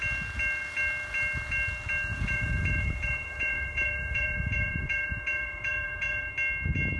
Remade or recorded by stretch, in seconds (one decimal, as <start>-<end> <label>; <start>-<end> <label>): 0.0-2.1 recorded; 2.1-6.3 remade; 6.3-7.0 recorded